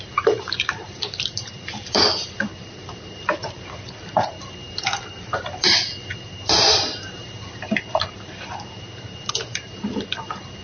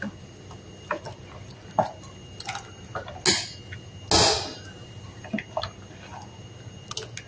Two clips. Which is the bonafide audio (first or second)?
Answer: second